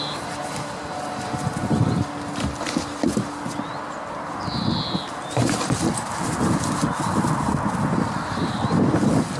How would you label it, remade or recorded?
recorded